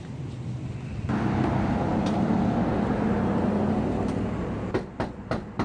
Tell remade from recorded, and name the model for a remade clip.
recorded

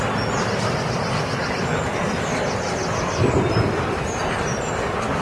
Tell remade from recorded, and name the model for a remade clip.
recorded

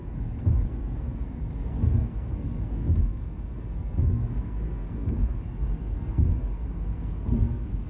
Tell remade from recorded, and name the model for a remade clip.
remade, codec, SNAC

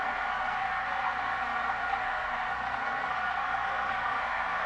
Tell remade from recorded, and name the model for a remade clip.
remade, codec, SNAC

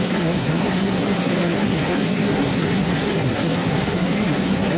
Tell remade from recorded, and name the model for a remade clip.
remade, codec, SNAC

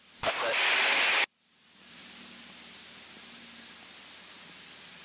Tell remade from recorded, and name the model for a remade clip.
recorded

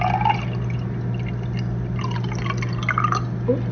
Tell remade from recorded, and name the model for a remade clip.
recorded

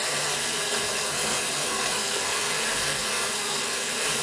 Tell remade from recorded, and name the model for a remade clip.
remade, codec, SNAC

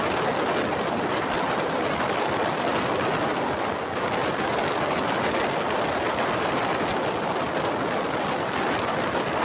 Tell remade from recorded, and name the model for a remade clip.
recorded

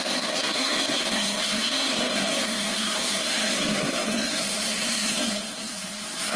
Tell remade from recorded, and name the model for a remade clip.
remade, codec, SNAC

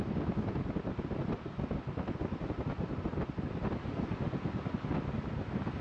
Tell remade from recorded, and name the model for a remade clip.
recorded